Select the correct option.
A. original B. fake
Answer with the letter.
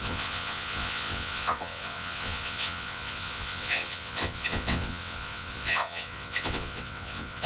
B